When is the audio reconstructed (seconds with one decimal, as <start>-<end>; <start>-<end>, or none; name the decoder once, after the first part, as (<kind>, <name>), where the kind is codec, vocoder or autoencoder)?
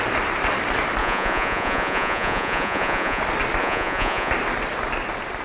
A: 1.0-3.2 (vocoder, Vocos); 3.6-4.3